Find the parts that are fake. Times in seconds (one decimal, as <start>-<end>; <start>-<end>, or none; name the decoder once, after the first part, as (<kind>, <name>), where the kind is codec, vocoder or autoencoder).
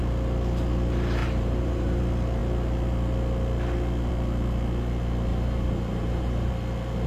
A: 1.2-2.0 (vocoder, BigVGAN v2); 5.3-6.5